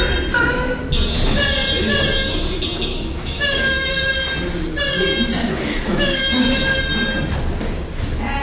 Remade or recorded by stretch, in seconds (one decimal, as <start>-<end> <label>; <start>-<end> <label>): 0.0-2.9 recorded; 2.9-3.9 remade; 3.9-5.5 recorded; 5.5-6.8 remade; 6.8-8.4 recorded